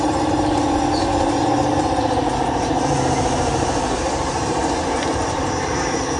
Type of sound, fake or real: fake